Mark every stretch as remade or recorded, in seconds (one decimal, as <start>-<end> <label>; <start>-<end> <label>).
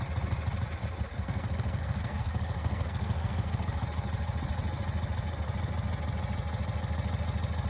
0.0-1.1 recorded; 1.1-3.8 remade; 3.8-7.7 recorded